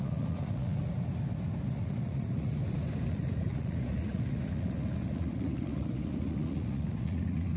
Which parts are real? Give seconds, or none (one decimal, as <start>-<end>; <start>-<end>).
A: 0.8-1.7; 2.6-3.1